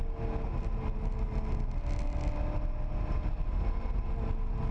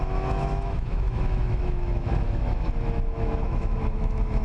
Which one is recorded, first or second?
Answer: first